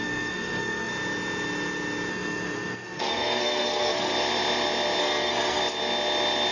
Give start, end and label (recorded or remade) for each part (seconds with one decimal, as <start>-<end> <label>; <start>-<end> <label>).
0.0-0.9 remade; 0.9-2.1 recorded; 2.1-4.1 remade; 4.1-5.0 recorded; 5.0-5.6 remade; 5.6-6.5 recorded